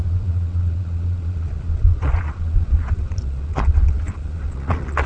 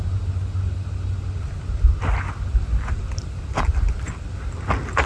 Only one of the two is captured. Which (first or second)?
second